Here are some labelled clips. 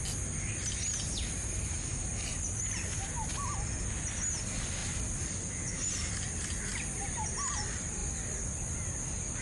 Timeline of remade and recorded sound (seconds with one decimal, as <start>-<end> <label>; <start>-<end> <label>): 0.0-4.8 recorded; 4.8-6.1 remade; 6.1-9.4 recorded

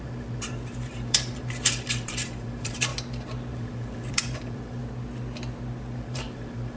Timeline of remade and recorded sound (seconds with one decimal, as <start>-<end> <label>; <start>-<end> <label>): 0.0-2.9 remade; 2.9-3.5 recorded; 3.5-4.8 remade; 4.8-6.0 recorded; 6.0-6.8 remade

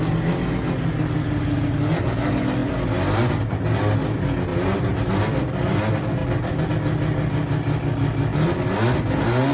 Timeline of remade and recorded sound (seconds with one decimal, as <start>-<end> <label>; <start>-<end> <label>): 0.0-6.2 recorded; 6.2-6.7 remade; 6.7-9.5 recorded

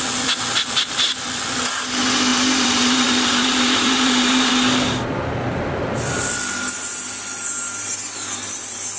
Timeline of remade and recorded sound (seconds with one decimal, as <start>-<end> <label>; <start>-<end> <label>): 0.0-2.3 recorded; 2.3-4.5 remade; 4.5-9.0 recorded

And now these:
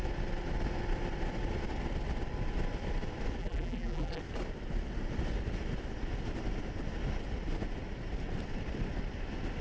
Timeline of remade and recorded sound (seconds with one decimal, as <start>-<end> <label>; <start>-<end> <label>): 0.0-3.4 recorded; 3.4-4.2 remade; 4.2-9.6 recorded

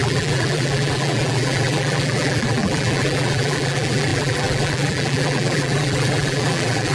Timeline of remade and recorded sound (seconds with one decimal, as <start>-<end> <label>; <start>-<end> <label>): 0.0-6.9 remade